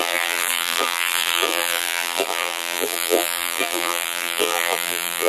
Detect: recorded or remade remade